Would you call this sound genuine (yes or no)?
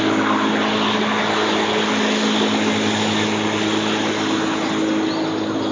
yes